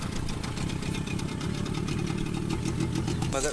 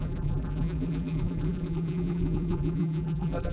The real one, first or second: first